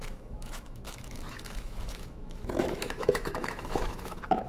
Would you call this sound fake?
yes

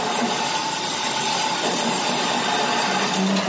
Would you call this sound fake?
no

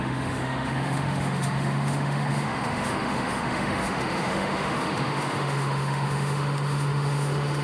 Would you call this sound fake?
yes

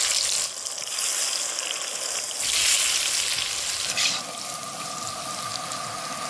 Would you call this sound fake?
no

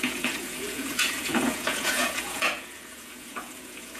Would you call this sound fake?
yes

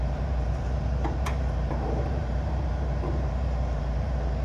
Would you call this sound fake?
yes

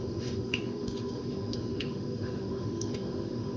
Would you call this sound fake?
yes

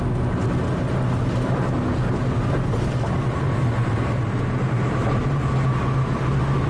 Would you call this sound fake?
no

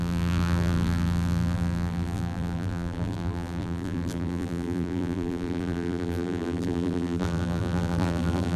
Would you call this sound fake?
yes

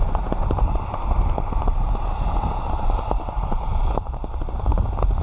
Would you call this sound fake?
yes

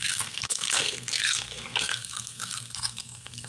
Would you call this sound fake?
yes